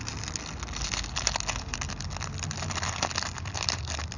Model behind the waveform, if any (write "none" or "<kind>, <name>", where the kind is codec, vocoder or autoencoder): none